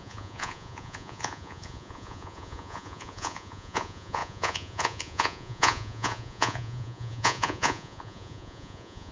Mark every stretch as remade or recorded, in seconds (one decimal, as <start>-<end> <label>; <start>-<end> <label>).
0.0-9.1 remade